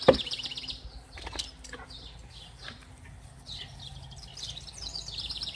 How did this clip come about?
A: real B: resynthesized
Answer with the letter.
B